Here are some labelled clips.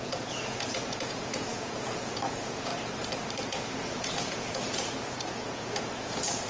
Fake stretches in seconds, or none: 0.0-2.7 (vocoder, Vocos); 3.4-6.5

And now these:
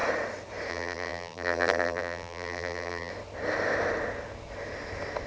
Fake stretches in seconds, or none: 0.7-3.1 (vocoder, BigVGAN v2)